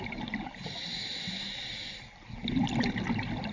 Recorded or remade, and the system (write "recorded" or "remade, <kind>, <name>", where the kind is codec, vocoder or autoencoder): recorded